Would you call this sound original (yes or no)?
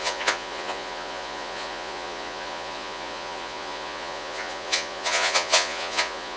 no